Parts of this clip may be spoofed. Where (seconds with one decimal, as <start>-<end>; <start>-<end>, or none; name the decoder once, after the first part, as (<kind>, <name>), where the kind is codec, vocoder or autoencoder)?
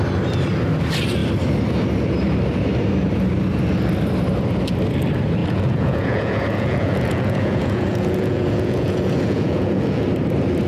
5.4-10.0 (vocoder, Vocos)